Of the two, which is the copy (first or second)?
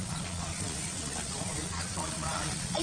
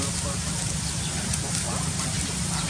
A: first